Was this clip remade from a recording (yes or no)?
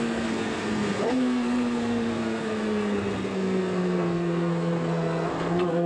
yes